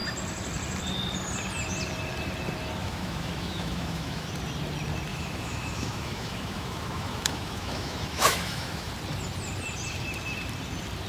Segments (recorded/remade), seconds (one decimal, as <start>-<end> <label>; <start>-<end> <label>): 0.0-2.8 recorded; 2.8-4.3 remade; 4.3-5.1 recorded; 5.1-8.9 remade; 8.9-11.1 recorded